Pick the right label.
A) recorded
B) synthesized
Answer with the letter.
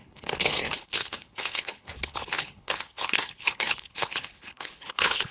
B